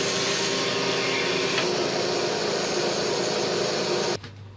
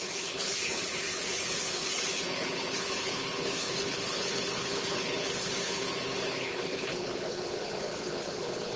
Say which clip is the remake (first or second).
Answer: second